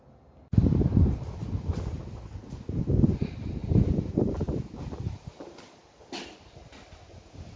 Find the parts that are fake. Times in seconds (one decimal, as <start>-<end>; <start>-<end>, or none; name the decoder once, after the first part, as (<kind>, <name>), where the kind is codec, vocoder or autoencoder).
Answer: none